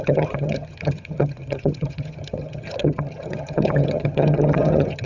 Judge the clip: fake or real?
fake